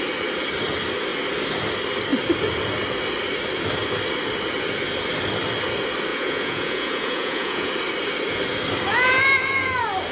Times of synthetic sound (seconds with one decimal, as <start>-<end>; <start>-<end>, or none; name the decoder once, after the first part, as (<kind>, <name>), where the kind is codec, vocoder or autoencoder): 6.1-7.7 (vocoder, Vocos); 8.9-9.7